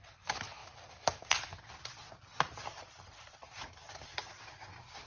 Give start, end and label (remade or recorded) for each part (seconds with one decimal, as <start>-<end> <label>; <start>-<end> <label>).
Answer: 0.0-5.1 recorded